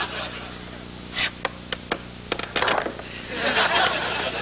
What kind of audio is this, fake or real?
real